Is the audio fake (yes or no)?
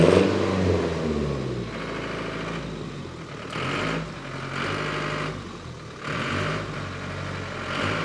no